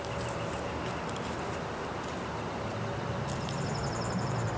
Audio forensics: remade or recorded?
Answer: recorded